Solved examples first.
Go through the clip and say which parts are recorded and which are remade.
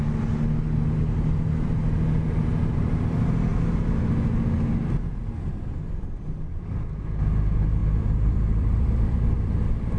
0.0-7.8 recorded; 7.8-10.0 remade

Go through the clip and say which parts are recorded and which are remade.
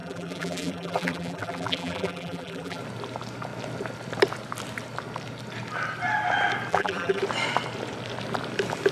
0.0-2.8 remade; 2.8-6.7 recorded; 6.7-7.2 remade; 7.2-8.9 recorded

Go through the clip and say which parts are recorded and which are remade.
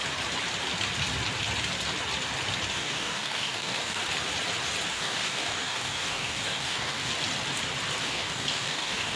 0.0-2.7 recorded; 2.7-4.0 remade; 4.0-4.9 recorded; 4.9-7.1 remade; 7.1-8.0 recorded; 8.0-9.2 remade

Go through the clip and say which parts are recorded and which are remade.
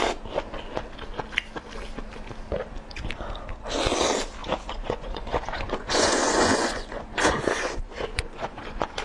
0.0-4.4 recorded; 4.4-9.0 remade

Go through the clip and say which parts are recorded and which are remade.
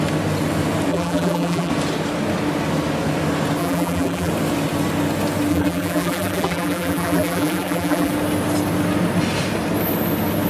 0.0-0.9 recorded; 0.9-1.7 remade; 1.7-3.6 recorded; 3.6-4.3 remade; 4.3-5.5 recorded; 5.5-8.1 remade; 8.1-10.5 recorded